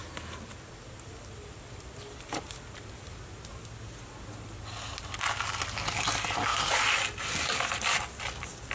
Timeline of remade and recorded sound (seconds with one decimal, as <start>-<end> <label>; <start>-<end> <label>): 0.0-8.7 recorded